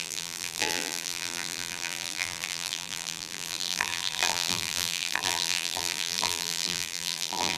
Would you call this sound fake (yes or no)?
yes